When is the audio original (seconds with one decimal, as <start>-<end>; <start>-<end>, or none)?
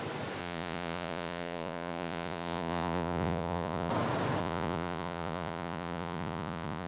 0.0-0.4; 3.9-4.4